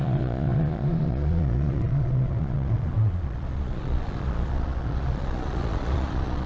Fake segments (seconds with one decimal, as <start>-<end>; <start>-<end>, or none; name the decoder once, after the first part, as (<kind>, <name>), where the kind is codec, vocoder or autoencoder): 0.0-6.5 (vocoder, Vocos)